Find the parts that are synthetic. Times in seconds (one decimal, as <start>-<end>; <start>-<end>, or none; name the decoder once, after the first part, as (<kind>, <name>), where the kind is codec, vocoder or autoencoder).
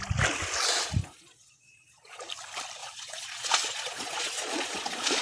1.0-2.2 (vocoder, Vocos); 2.8-5.2